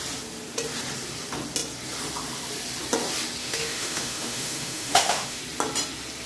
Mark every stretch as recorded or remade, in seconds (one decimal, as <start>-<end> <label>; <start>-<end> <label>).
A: 0.0-3.4 recorded; 3.4-5.4 remade; 5.4-6.3 recorded

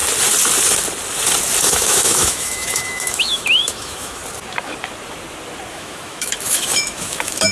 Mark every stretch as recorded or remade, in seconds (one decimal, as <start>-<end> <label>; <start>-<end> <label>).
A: 0.0-1.6 recorded; 1.6-4.2 remade; 4.2-5.7 recorded; 5.7-7.5 remade